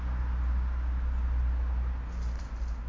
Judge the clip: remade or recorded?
recorded